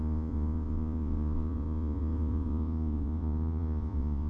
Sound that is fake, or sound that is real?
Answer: fake